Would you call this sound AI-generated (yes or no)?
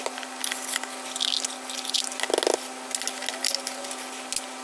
no